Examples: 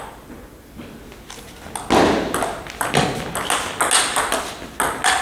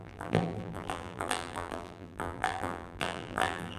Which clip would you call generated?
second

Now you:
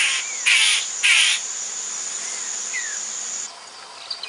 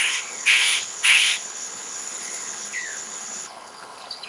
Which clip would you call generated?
second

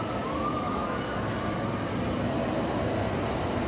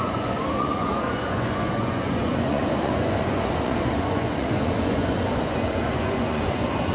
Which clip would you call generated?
second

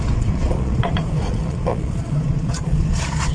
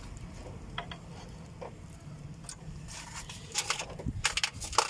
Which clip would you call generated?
first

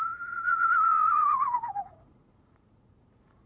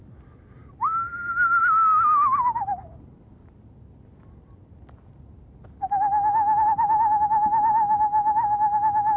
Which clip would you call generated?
first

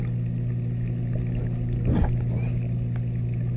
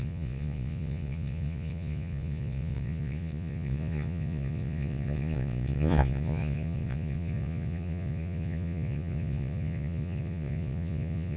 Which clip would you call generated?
second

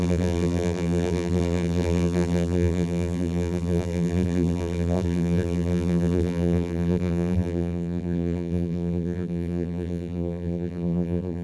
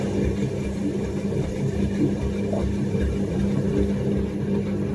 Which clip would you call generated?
first